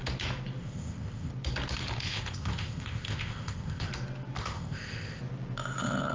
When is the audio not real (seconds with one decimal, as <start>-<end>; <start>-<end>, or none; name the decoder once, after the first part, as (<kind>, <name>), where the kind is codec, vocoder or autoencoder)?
0.6-1.3 (codec, ZipCodec); 2.0-3.9; 4.4-5.2